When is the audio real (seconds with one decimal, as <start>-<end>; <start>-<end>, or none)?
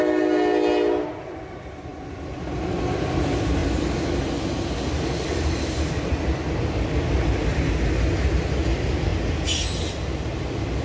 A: 0.0-10.8